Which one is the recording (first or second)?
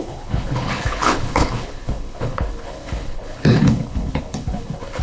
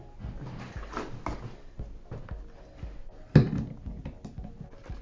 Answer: second